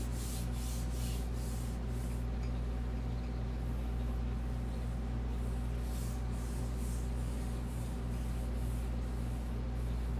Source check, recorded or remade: recorded